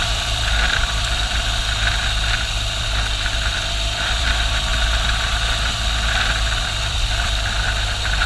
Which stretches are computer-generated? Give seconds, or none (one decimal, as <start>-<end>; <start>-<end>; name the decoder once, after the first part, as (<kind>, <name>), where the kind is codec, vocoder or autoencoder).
0.0-4.7 (vocoder, BigVGAN v2); 6.8-8.3